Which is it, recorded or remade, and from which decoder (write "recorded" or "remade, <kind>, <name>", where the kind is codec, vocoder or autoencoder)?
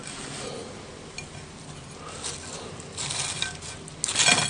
recorded